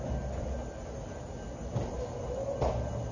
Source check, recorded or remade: recorded